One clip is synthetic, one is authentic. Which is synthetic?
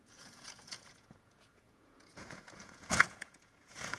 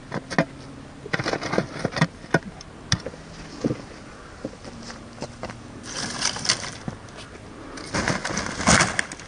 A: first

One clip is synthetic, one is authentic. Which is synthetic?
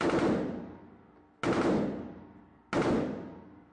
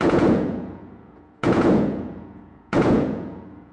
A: second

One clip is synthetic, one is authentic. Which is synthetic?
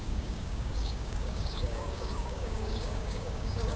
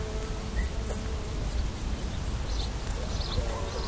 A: first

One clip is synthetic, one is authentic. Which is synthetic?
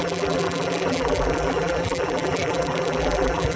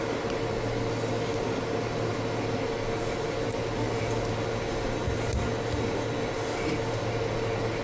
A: first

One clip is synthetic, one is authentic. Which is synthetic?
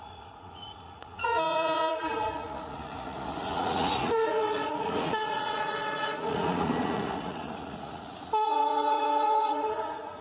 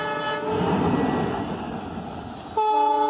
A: first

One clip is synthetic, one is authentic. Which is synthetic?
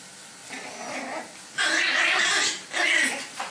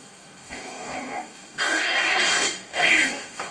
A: second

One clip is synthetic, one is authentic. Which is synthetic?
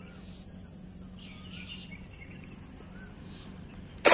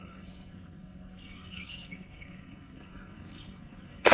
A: second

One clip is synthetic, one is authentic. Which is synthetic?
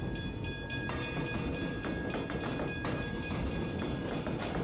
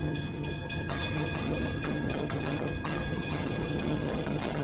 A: second